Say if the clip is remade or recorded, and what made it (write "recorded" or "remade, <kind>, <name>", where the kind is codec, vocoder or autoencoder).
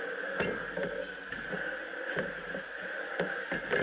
recorded